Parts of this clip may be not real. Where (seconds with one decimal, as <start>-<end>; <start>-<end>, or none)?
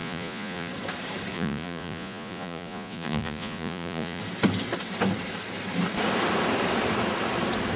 0.0-0.7; 1.3-4.2